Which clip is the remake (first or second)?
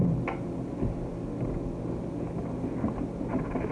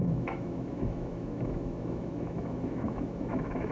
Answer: second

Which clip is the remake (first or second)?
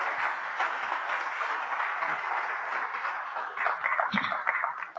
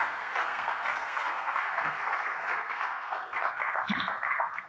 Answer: second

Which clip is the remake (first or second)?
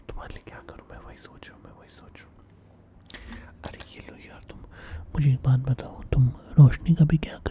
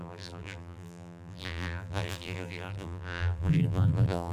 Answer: second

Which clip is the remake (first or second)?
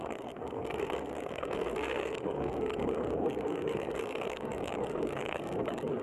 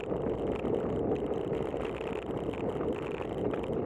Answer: first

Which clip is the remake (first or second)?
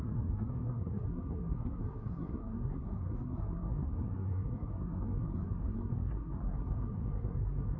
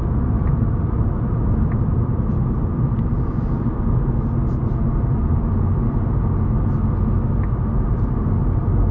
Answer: first